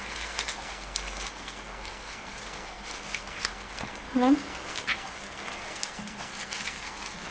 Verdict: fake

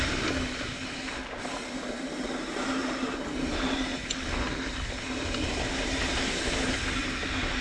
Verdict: real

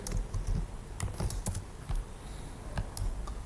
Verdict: real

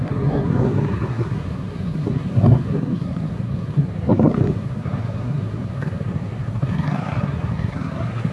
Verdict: fake